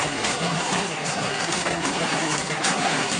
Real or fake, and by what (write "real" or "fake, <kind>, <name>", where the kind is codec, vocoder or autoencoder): fake, codec, SNAC